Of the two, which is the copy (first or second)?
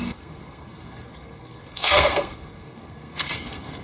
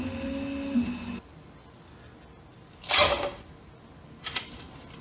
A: first